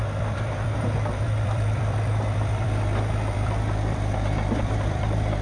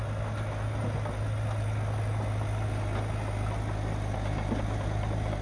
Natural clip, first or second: second